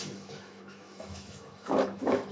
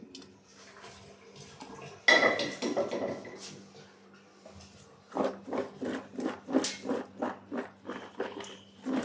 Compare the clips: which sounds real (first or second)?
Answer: second